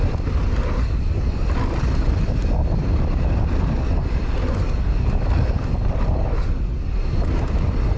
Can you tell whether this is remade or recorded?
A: recorded